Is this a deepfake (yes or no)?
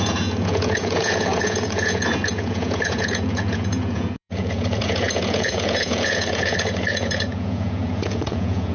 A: yes